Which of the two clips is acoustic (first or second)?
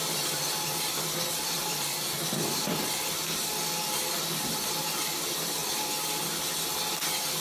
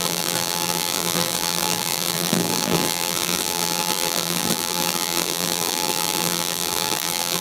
first